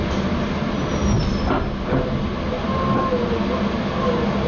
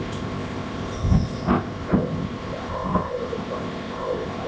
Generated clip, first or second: second